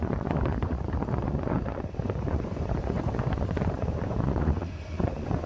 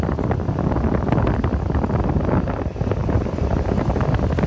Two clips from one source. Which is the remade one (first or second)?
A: first